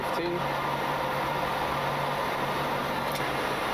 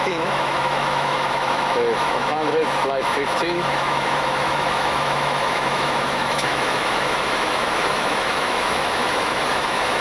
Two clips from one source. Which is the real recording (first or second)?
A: first